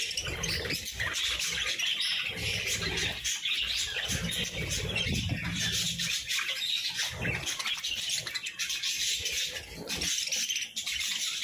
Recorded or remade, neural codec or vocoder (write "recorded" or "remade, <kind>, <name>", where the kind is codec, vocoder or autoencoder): recorded